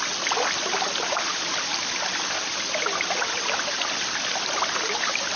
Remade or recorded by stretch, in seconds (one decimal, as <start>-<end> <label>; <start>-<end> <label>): 0.0-5.4 recorded